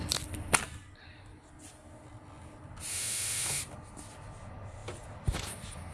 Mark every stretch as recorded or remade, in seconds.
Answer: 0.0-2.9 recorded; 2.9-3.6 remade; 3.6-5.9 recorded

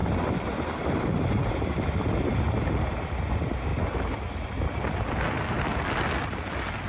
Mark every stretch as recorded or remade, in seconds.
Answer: 0.0-1.5 remade; 1.5-6.9 recorded

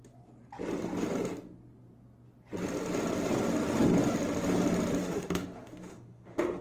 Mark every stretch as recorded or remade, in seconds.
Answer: 0.0-5.0 recorded; 5.0-6.6 remade

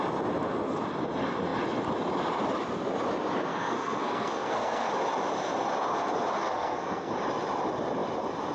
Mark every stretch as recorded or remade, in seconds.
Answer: 0.0-3.5 recorded; 3.5-4.9 remade; 4.9-6.4 recorded; 6.4-7.1 remade; 7.1-8.5 recorded

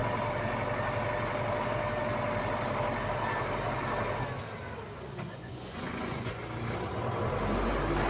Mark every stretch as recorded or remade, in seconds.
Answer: 0.0-4.9 recorded; 4.9-6.4 remade; 6.4-8.1 recorded

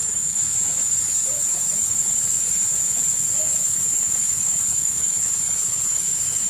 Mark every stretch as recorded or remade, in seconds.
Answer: 0.0-6.5 remade

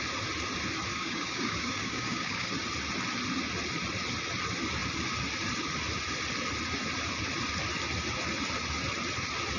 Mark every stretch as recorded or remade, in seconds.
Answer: 0.0-0.9 recorded; 0.9-2.5 remade; 2.5-9.6 recorded